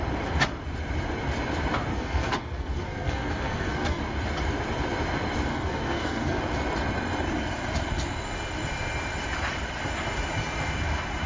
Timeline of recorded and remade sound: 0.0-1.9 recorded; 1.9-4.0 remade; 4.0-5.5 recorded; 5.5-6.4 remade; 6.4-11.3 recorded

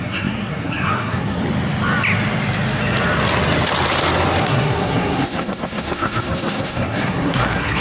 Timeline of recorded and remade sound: 0.0-1.4 remade; 1.4-4.4 recorded; 4.4-7.8 remade

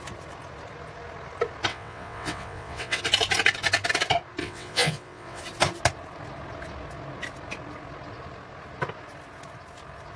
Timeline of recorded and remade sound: 0.0-1.7 recorded; 1.7-3.0 remade; 3.0-4.4 recorded; 4.4-5.4 remade; 5.4-10.2 recorded

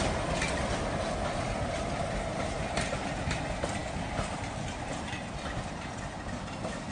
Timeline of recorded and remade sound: 0.0-6.9 recorded